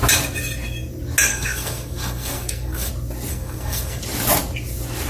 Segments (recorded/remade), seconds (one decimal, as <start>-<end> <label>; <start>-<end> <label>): 0.0-1.3 recorded; 1.3-2.9 remade; 2.9-3.3 recorded; 3.3-4.0 remade; 4.0-5.1 recorded